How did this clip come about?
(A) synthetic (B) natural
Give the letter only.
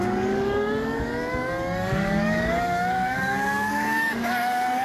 A